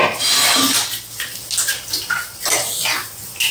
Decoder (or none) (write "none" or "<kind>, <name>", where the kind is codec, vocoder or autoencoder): none